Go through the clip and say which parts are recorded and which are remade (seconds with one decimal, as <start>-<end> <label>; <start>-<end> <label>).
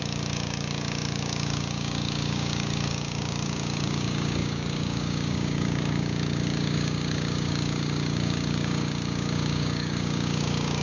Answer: 0.0-10.8 remade